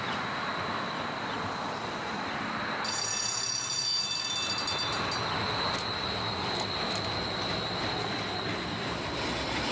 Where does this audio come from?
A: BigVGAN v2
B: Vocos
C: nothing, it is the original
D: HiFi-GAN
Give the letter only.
C